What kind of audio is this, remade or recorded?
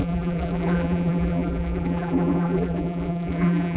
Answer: remade